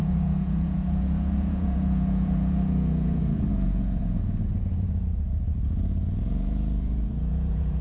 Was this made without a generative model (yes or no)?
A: no